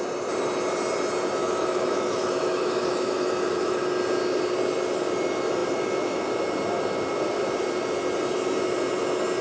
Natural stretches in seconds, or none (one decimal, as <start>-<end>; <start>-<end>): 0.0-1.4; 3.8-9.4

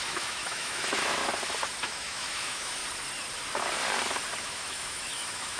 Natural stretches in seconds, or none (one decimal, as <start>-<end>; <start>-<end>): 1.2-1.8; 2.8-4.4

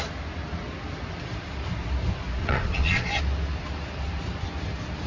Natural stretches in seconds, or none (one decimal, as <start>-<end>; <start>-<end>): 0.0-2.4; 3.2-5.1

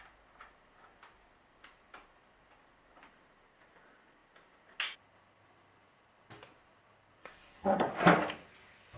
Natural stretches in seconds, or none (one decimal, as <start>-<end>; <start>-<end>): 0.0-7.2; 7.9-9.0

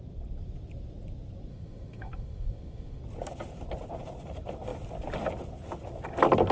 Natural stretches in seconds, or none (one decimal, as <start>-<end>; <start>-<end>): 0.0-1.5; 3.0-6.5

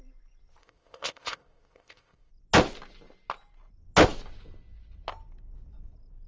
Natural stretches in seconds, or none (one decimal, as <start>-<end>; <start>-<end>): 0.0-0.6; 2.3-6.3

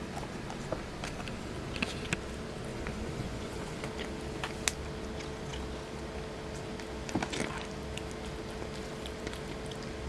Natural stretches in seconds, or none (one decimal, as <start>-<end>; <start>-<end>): 0.0-2.7; 3.8-10.1